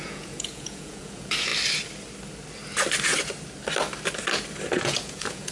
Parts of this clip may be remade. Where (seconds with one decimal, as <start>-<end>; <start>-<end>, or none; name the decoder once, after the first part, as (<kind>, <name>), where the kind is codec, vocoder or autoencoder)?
0.0-1.5 (vocoder, Vocos); 4.7-5.5